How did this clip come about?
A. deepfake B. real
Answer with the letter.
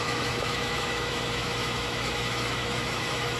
A